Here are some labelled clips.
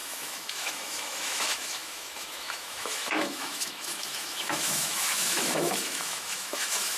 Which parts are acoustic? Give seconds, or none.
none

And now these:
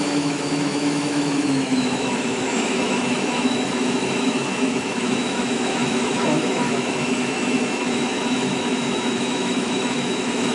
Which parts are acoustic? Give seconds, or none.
none

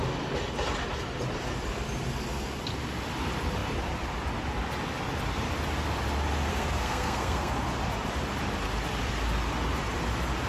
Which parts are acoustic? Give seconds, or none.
0.0-6.5; 7.5-10.5

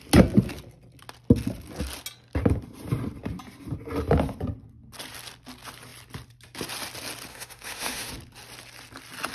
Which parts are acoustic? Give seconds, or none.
0.0-7.3; 8.1-9.3